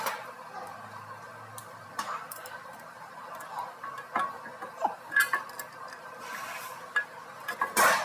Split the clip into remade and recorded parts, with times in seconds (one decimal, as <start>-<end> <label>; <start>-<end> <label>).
0.0-1.6 recorded; 1.6-3.2 remade; 3.2-8.0 recorded